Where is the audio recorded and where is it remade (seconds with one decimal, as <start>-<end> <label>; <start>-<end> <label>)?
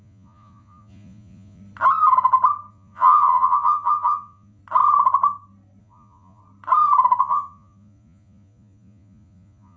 0.0-1.6 remade; 1.6-2.7 recorded; 2.7-4.6 remade; 4.6-5.8 recorded; 5.8-6.4 remade; 6.4-7.2 recorded; 7.2-9.8 remade